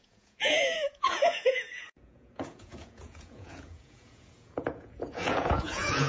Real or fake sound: fake